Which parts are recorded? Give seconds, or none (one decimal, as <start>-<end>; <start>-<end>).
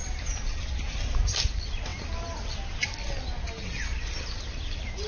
0.0-5.1